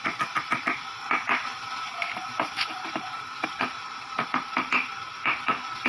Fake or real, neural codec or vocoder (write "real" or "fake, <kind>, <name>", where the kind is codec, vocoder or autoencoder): fake, vocoder, BigVGAN v2